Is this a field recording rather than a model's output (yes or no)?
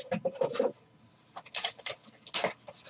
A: yes